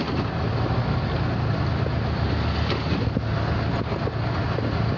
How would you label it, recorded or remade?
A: recorded